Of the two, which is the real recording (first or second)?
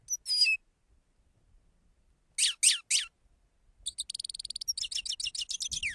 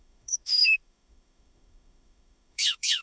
first